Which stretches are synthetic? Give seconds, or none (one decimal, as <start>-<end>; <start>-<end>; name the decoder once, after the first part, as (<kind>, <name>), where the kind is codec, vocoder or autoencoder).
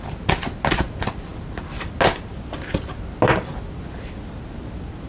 none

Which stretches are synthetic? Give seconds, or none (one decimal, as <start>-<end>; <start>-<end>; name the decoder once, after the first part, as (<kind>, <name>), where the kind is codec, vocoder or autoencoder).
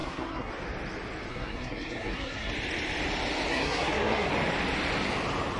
0.0-0.5 (codec, SNAC); 1.3-2.5; 3.5-4.3